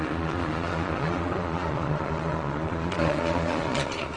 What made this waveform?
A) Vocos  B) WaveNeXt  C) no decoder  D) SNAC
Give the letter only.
A